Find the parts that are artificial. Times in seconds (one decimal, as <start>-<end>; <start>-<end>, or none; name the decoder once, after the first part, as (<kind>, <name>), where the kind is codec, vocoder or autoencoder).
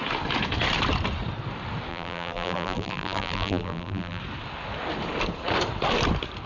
1.9-4.2 (vocoder, BigVGAN v2)